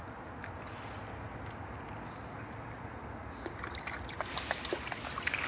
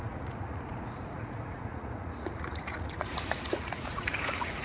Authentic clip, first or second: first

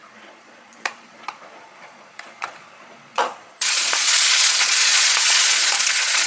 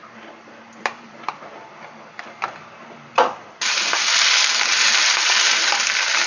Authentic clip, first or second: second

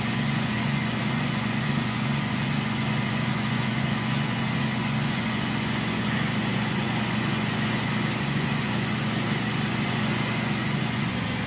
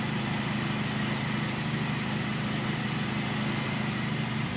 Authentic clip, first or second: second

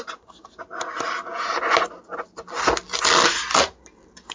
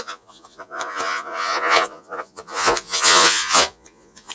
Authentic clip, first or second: first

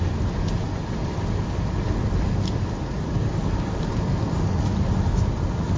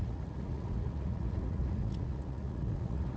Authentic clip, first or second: first